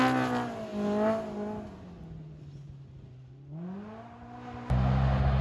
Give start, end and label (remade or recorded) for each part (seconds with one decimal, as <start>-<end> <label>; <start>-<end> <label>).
0.0-5.4 recorded